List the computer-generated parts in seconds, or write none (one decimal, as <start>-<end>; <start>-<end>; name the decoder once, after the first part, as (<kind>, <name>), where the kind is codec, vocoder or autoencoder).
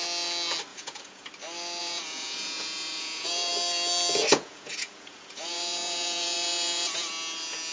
0.7-1.3 (vocoder, Vocos); 1.8-3.5; 4.3-7.1